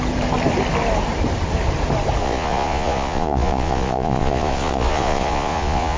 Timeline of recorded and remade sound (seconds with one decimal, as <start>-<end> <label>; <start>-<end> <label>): 0.0-2.2 recorded; 2.2-6.0 remade